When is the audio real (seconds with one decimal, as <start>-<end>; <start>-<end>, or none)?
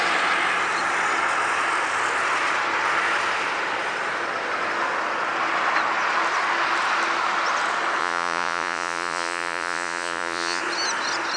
0.0-8.0; 10.6-11.4